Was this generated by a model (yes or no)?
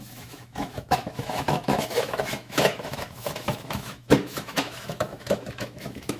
yes